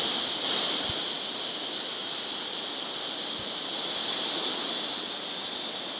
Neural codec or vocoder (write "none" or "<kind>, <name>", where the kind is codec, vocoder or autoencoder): none